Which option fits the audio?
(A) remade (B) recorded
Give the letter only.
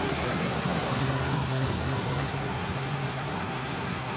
A